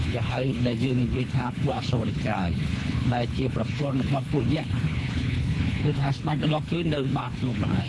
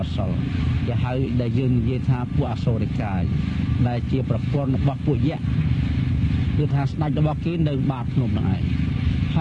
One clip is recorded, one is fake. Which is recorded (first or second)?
second